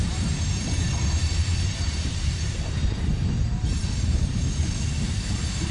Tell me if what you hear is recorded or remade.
remade